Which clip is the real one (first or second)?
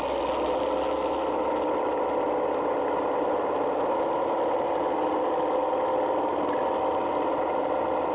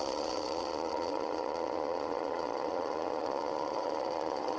first